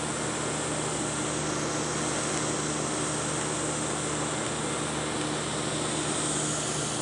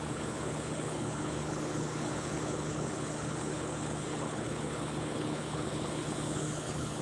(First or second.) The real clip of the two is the first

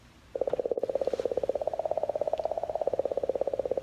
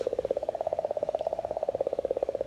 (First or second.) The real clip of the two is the first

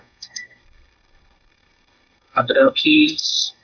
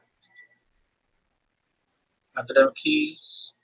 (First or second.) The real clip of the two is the second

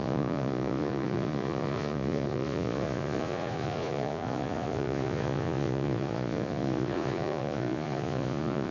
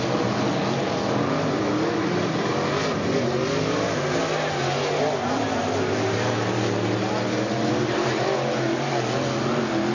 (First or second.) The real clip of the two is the second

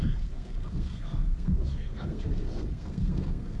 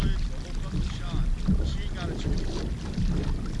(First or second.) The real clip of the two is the second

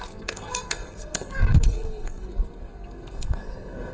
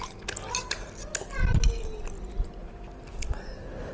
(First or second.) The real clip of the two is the second